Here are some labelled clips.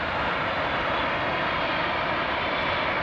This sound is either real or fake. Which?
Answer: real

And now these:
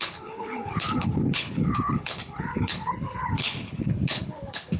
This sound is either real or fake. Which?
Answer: fake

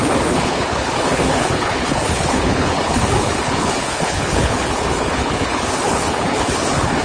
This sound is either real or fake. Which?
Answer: fake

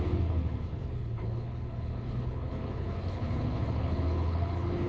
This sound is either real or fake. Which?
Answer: fake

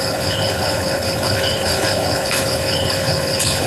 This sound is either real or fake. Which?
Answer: fake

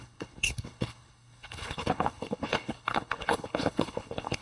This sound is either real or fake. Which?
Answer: fake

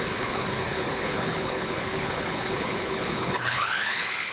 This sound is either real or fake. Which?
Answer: fake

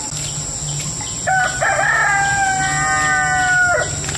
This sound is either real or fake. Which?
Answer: real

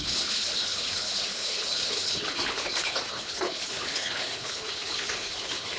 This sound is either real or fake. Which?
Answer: fake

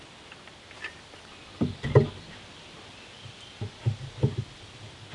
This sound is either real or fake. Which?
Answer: real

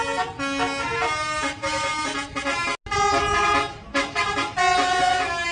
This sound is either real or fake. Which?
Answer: real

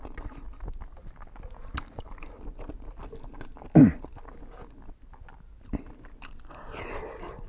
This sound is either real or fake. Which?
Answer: real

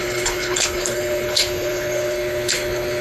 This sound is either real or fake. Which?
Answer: fake